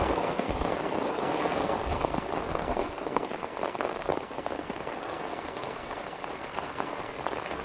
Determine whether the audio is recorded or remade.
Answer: remade